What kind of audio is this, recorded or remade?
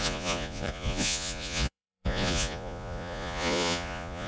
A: remade